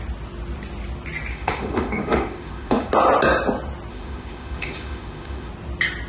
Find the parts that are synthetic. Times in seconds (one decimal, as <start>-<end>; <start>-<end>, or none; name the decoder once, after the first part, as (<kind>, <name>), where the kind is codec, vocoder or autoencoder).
1.3-2.9 (autoencoder, DAC-VAE); 3.9-5.5